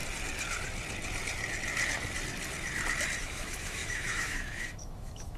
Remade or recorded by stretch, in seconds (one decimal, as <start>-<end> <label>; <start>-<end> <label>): 0.0-3.2 recorded; 3.2-5.4 remade